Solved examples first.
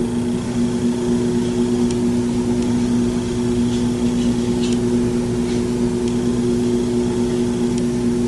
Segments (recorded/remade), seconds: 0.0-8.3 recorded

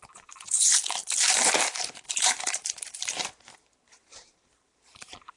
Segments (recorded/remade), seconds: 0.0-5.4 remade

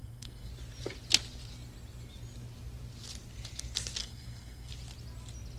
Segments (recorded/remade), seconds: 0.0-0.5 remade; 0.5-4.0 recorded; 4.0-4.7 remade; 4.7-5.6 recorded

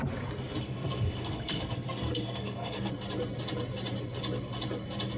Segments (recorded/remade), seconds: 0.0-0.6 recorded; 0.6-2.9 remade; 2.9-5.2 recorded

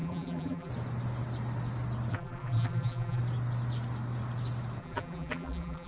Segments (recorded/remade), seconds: 0.0-0.7 remade; 0.7-2.1 recorded; 2.1-3.2 remade; 3.2-4.8 recorded; 4.8-5.9 remade